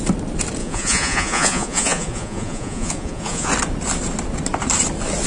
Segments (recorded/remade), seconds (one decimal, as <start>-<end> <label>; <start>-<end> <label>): 0.0-0.6 recorded; 0.6-3.5 remade; 3.5-5.3 recorded